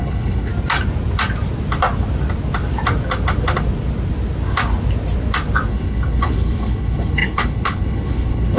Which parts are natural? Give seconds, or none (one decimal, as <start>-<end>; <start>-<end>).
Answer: 0.5-5.7